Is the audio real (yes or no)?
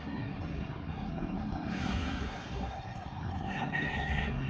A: no